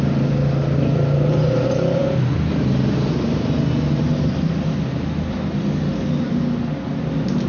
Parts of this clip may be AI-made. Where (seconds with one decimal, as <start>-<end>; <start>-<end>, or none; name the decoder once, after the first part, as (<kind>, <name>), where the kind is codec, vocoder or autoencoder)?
none